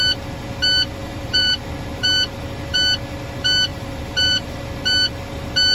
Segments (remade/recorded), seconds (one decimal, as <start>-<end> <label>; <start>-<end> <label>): 0.0-1.0 recorded; 1.0-1.6 remade; 1.6-3.7 recorded; 3.7-4.6 remade; 4.6-5.7 recorded